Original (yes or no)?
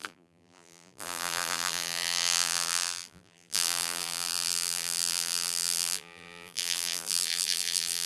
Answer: no